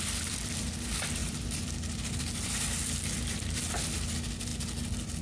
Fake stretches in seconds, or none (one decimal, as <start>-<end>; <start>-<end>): 1.2-3.6